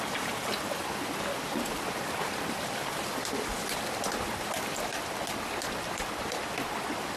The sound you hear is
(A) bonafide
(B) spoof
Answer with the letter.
B